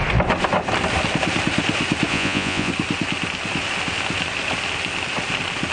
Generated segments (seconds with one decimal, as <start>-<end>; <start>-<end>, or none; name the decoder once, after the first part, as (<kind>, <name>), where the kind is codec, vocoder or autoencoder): 2.1-2.7 (vocoder, Vocos)